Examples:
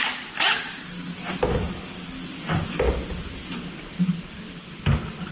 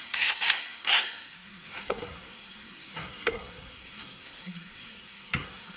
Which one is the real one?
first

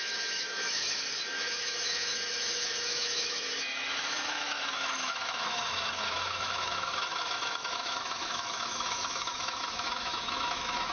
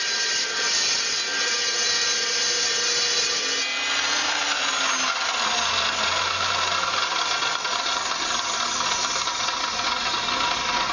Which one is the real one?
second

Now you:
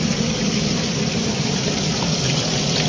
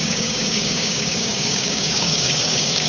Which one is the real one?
first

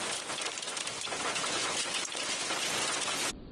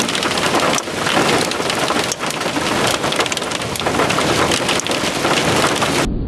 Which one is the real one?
second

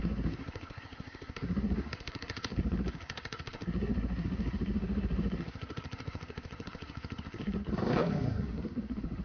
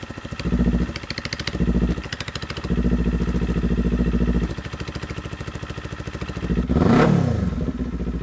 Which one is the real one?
second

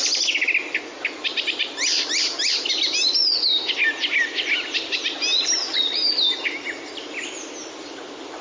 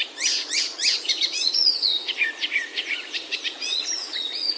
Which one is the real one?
first